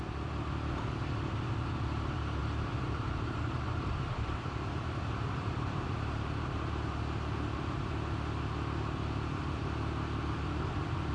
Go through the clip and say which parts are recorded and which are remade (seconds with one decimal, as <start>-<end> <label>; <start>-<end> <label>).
0.0-2.4 recorded; 2.4-7.0 remade; 7.0-11.1 recorded